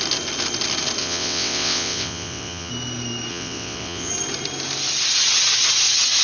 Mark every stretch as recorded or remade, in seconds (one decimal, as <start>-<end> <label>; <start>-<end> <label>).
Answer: 0.0-1.0 recorded; 1.0-2.7 remade; 2.7-3.3 recorded; 3.3-4.1 remade; 4.1-6.2 recorded